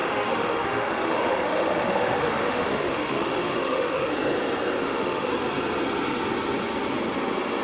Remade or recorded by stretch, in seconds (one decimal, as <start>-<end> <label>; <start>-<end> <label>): 0.0-4.1 remade; 4.1-4.8 recorded; 4.8-5.3 remade; 5.3-7.6 recorded